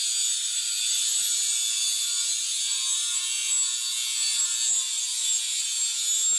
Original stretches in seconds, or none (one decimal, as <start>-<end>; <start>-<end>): 0.0-6.4